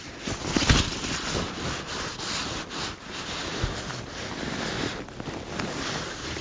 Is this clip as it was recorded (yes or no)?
yes